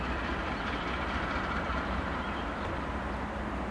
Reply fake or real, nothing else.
real